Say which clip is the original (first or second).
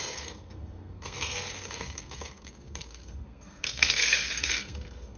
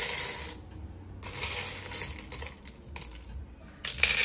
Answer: second